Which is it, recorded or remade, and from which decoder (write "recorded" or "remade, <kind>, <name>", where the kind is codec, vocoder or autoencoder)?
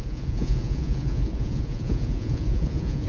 remade, vocoder, Vocos